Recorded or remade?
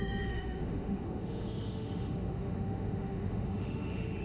remade